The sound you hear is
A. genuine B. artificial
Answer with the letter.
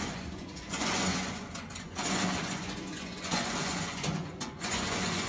B